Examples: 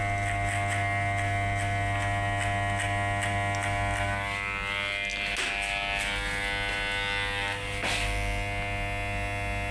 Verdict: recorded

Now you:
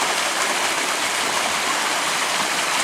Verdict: remade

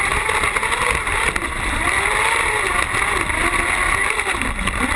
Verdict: recorded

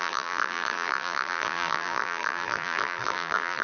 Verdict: remade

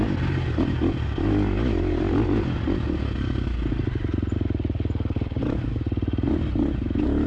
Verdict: recorded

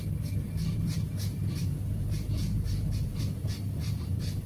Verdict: remade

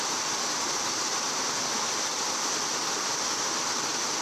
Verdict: recorded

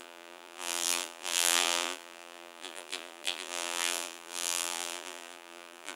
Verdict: remade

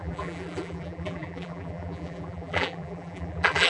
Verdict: remade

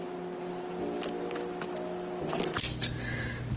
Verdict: recorded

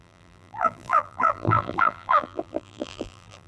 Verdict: remade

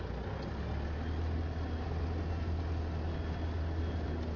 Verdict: recorded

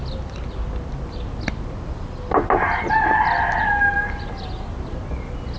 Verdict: recorded